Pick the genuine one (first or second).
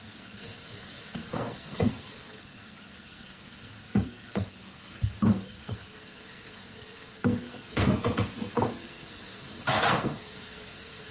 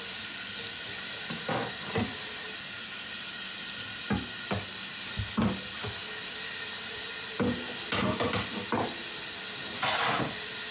second